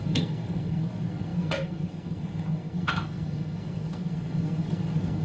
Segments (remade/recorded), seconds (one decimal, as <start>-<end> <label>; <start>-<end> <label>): 0.0-5.2 remade